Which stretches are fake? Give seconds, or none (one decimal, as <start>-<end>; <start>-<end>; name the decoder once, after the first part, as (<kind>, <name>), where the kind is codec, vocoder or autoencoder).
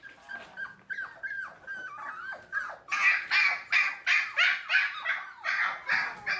none